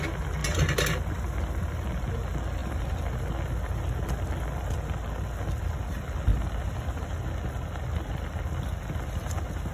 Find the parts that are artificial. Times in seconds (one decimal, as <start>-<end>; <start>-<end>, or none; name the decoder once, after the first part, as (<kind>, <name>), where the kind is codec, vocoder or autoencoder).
none